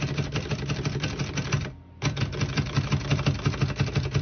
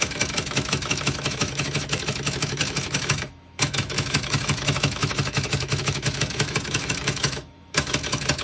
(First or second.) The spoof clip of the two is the second